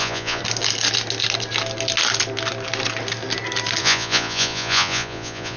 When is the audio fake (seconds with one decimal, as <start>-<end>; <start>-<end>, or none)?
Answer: 0.0-0.4; 3.8-5.6